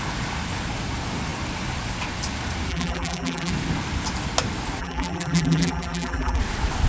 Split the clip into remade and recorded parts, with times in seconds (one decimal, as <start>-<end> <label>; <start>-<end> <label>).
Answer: 0.0-2.7 recorded; 2.7-3.5 remade; 3.5-4.8 recorded; 4.8-6.4 remade; 6.4-6.9 recorded